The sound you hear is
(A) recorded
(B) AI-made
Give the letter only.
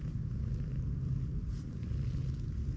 A